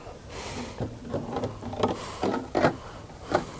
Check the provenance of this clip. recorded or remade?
recorded